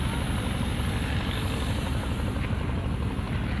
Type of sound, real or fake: real